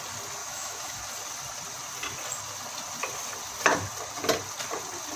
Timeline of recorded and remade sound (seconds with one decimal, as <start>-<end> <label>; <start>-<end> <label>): 0.0-0.4 recorded; 0.4-1.0 remade; 1.0-5.2 recorded